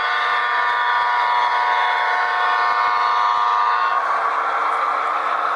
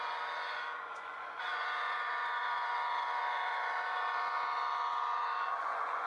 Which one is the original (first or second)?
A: first